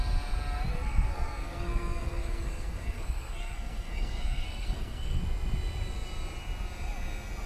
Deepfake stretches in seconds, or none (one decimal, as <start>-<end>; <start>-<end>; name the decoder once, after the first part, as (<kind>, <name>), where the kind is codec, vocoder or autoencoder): 0.7-5.2 (codec, SNAC)